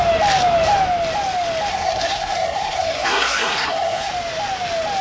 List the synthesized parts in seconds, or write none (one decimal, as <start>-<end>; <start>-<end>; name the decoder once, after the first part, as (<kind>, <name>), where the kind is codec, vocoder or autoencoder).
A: 1.7-4.1 (codec, SNAC)